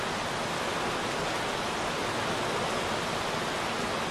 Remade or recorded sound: recorded